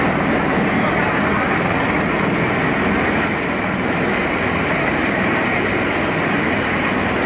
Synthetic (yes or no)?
no